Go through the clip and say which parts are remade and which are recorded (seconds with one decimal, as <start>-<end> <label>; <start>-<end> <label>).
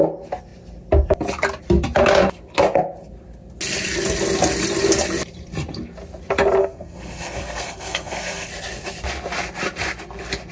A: 0.0-6.6 recorded; 6.6-8.5 remade; 8.5-10.5 recorded